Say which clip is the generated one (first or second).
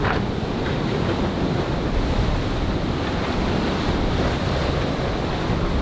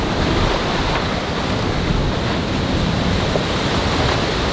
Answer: first